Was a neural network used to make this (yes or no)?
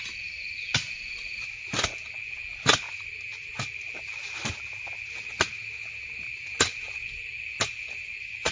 no